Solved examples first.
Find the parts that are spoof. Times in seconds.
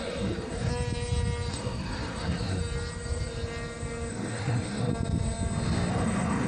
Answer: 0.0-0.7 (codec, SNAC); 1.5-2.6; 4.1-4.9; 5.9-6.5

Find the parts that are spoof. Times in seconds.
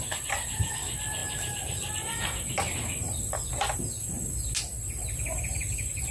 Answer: none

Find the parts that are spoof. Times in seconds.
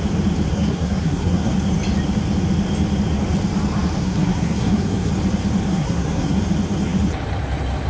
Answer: 0.5-1.5 (codec, SNAC); 4.0-5.1; 5.7-6.4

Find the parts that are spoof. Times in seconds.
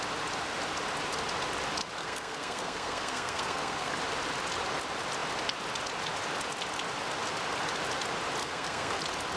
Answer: 2.0-3.9 (codec, SNAC); 8.4-9.0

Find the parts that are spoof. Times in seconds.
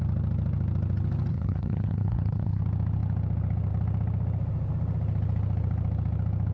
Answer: 1.3-2.6 (codec, SNAC)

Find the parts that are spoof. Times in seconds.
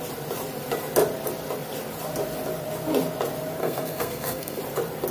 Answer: 3.6-4.6 (codec, SNAC)